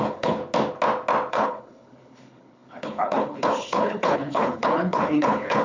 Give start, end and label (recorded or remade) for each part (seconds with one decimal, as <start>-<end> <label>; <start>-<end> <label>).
0.0-0.4 remade; 0.4-1.3 recorded; 1.3-5.6 remade